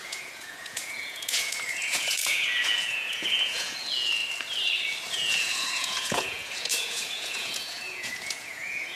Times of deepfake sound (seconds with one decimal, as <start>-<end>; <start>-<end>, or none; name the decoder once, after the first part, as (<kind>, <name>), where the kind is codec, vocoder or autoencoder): 0.0-4.2 (vocoder, Vocos); 5.1-9.0